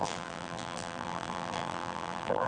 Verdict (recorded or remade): remade